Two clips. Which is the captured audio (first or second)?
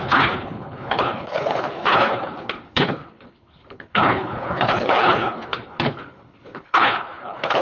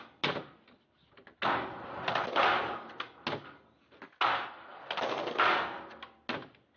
second